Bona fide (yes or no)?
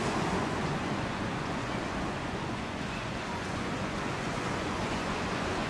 no